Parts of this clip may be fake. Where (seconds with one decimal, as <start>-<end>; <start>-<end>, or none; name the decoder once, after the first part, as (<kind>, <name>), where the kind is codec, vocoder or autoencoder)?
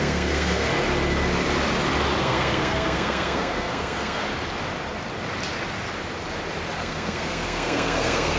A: 0.0-0.7 (codec, SNAC); 2.2-4.2; 6.8-8.4